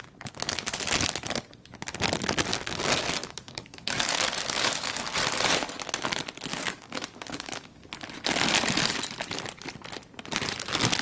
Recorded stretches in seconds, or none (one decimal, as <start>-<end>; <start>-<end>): 0.0-2.5; 5.0-6.5; 7.9-11.0